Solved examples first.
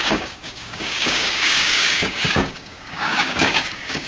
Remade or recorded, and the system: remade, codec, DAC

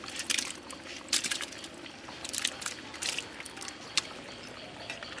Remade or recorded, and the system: recorded